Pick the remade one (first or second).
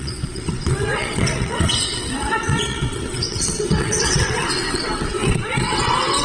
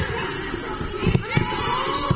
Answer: first